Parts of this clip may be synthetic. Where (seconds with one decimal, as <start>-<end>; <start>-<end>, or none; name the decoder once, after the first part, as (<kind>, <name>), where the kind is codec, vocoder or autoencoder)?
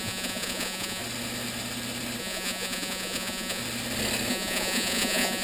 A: 0.0-1.0 (vocoder, Vocos); 2.2-3.6; 4.3-5.4